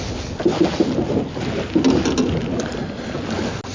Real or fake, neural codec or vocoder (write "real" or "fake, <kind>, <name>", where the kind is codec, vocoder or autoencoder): real